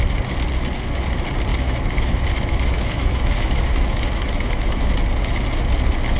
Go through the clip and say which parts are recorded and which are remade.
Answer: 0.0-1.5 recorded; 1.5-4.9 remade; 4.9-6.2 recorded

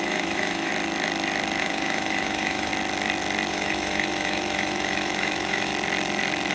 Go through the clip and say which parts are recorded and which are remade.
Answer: 0.0-0.7 remade; 0.7-1.6 recorded; 1.6-2.7 remade; 2.7-3.5 recorded; 3.5-5.7 remade; 5.7-6.5 recorded

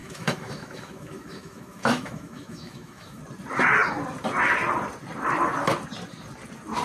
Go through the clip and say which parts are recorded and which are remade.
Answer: 0.0-3.2 remade; 3.2-6.8 recorded

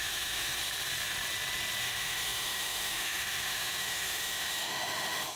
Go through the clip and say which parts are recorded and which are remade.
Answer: 0.0-0.6 remade; 0.6-1.8 recorded; 1.8-5.4 remade

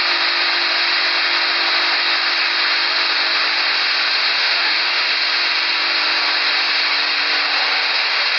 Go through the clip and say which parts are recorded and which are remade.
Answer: 0.0-4.4 recorded; 4.4-5.1 remade; 5.1-8.4 recorded

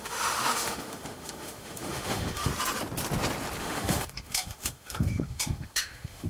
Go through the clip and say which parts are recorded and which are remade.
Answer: 0.0-2.5 remade; 2.5-3.6 recorded; 3.6-6.3 remade